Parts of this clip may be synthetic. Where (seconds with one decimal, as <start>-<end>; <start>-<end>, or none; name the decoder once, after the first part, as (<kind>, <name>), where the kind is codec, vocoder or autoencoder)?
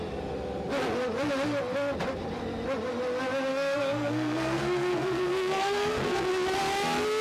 3.5-6.3 (codec, SNAC)